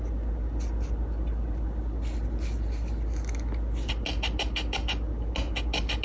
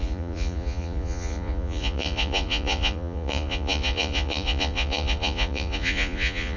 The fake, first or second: second